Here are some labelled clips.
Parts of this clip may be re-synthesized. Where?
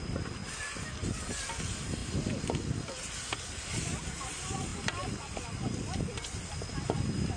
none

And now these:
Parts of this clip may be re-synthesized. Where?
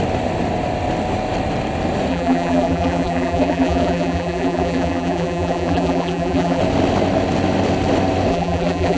2.1-6.6 (vocoder, BigVGAN v2); 8.3-9.0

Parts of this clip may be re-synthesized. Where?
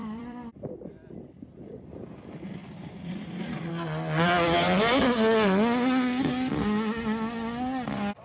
0.0-2.2 (vocoder, BigVGAN v2); 2.6-3.7